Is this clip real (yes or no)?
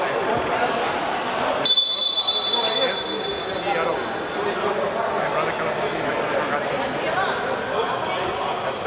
yes